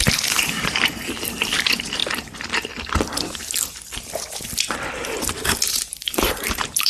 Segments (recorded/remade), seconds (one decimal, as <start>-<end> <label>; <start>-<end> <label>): 0.0-2.0 remade; 2.0-5.7 recorded; 5.7-6.9 remade